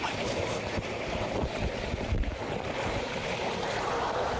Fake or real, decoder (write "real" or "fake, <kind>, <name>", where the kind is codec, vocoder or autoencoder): real